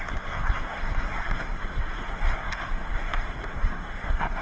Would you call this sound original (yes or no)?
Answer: no